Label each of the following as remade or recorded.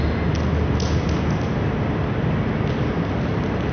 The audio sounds recorded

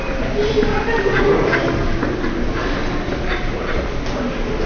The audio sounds recorded